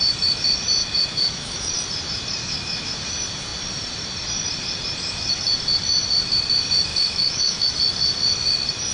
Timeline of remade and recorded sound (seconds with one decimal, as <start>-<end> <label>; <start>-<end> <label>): 0.0-0.8 recorded; 0.8-1.7 remade; 1.7-2.4 recorded; 2.4-3.0 remade; 3.0-6.9 recorded; 6.9-7.7 remade; 7.7-8.9 recorded

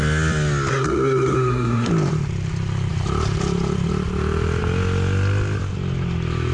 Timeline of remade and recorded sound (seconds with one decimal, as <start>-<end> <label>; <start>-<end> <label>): 0.0-0.7 recorded; 0.7-1.9 remade; 1.9-6.5 recorded